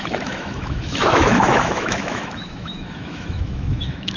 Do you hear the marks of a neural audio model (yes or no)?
yes